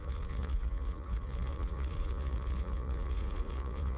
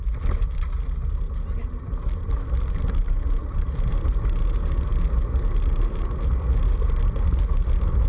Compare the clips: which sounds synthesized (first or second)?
first